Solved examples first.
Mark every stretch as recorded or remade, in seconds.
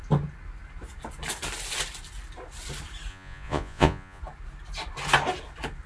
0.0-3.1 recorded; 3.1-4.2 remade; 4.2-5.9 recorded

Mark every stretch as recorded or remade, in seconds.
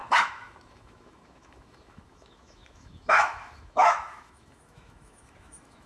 0.0-5.9 remade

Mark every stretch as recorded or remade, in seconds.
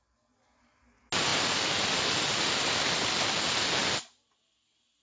0.0-5.0 recorded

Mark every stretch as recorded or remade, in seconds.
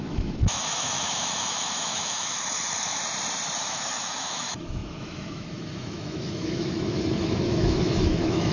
0.0-3.0 remade; 3.0-3.6 recorded; 3.6-8.5 remade